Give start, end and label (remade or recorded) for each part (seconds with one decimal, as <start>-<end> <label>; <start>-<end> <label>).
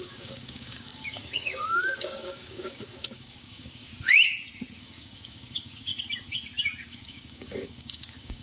0.0-3.9 remade; 3.9-4.8 recorded; 4.8-5.9 remade; 5.9-6.8 recorded; 6.8-8.4 remade